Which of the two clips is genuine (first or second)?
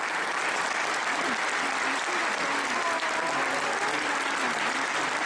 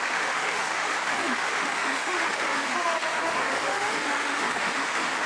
first